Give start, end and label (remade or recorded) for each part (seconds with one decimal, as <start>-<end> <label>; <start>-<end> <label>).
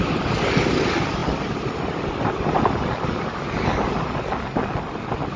0.0-5.4 recorded